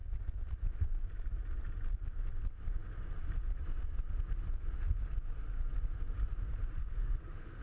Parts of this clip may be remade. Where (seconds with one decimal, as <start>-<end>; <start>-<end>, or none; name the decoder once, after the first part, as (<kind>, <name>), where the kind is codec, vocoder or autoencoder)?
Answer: 6.8-7.6 (codec, SNAC)